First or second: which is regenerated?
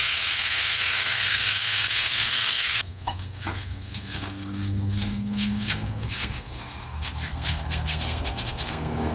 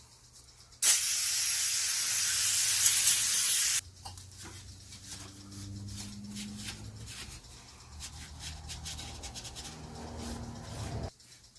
first